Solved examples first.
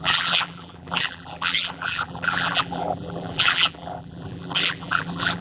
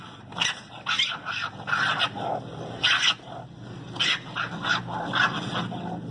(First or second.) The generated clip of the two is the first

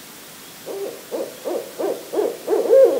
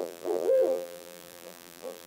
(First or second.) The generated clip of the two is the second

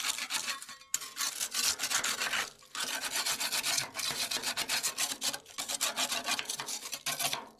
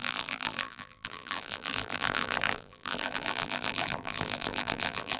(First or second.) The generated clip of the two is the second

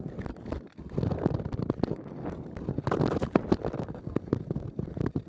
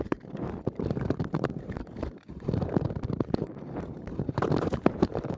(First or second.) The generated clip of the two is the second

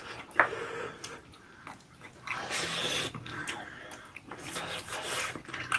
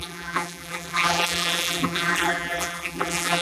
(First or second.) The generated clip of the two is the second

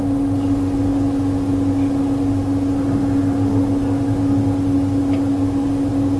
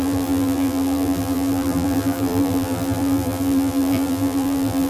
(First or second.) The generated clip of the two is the second